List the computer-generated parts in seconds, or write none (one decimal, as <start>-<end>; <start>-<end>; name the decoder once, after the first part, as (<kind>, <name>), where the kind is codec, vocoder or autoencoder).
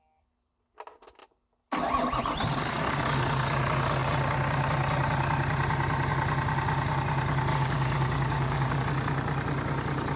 7.5-8.8 (codec, DAC)